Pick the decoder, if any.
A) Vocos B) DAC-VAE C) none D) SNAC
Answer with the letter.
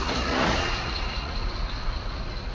A